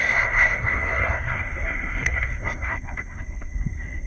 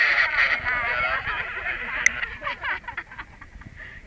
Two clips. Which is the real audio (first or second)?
second